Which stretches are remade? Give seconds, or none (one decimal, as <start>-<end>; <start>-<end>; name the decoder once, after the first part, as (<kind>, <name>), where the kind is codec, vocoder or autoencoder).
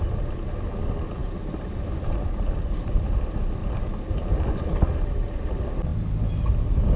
1.2-2.5 (vocoder, BigVGAN v2)